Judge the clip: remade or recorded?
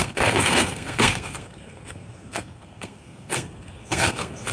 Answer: remade